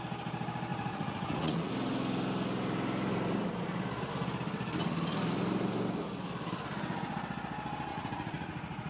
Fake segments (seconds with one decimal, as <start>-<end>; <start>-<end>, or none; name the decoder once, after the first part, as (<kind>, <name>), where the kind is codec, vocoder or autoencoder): 0.7-1.7 (vocoder, Vocos); 7.9-8.9